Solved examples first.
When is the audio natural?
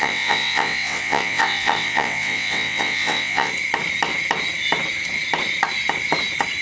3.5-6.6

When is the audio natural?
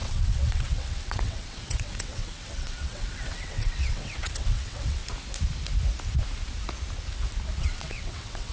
5.0-7.6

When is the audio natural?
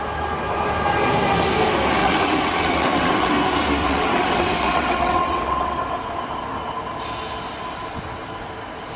0.0-2.0; 3.3-3.8; 5.8-9.0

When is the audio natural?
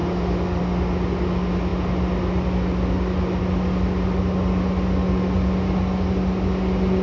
0.0-7.0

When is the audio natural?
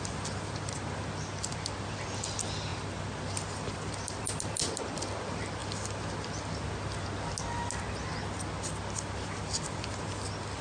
0.0-10.6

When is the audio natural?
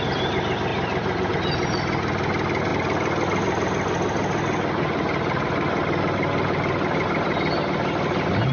0.0-8.5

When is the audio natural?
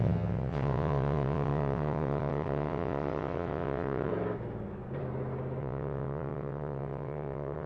4.1-5.6